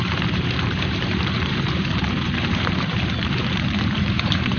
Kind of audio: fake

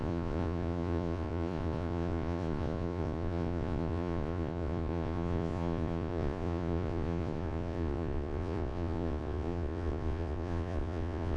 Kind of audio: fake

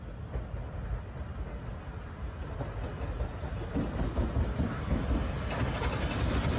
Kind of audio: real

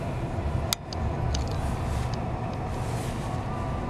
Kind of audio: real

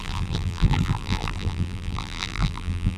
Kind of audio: fake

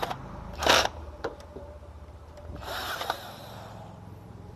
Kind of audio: fake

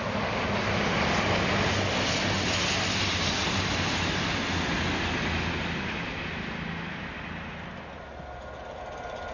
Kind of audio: real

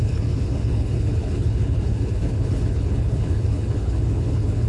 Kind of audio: fake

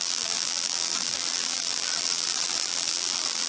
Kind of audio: fake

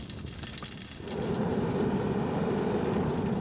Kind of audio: real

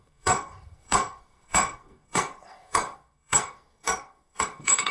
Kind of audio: fake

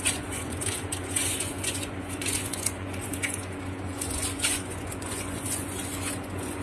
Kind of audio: fake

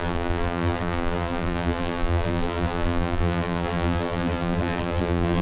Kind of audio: fake